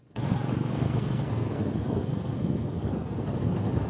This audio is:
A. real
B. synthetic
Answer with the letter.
B